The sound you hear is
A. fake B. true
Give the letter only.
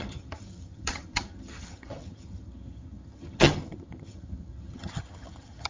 A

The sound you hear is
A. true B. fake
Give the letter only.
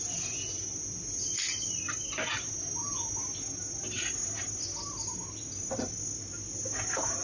A